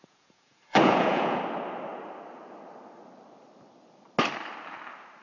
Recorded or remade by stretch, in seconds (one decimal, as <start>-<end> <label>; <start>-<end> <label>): 0.0-1.4 remade; 1.4-5.2 recorded